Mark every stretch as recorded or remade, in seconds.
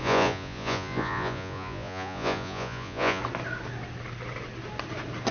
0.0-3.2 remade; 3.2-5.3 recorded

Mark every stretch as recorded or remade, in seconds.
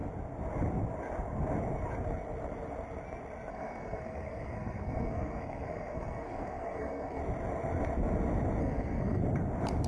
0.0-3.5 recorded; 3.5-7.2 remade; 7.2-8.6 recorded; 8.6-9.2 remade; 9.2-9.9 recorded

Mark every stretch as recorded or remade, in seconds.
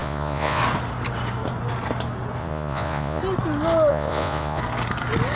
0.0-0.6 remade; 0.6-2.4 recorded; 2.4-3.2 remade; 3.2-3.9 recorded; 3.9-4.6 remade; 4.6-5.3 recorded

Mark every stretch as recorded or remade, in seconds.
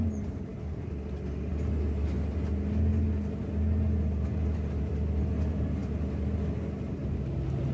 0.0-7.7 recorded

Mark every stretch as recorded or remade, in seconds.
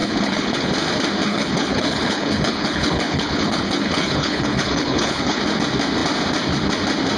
0.0-0.7 remade; 0.7-1.3 recorded; 1.3-5.4 remade; 5.4-7.2 recorded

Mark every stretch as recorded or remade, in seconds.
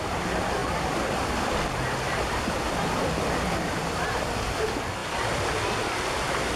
0.0-0.6 recorded; 0.6-4.6 remade; 4.6-5.0 recorded; 5.0-5.6 remade; 5.6-6.6 recorded